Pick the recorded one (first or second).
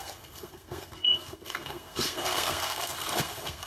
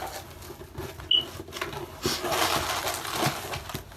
second